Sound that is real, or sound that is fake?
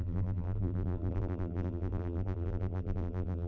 fake